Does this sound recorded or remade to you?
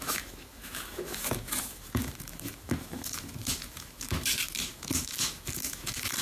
remade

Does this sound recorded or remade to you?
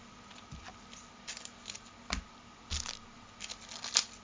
recorded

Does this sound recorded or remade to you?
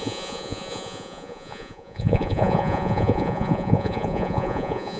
remade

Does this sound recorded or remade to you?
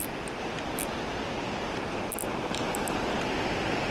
recorded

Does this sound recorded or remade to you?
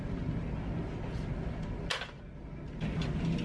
recorded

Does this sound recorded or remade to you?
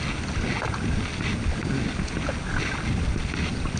recorded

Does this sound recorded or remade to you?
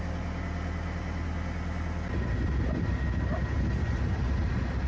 recorded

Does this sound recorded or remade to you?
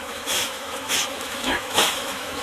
remade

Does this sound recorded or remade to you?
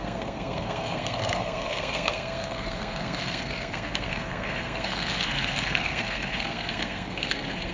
remade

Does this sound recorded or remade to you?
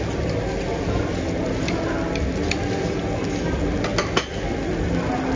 recorded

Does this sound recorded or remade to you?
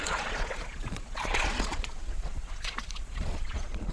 remade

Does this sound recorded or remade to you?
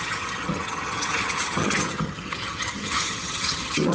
remade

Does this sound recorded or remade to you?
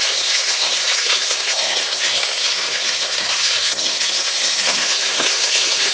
remade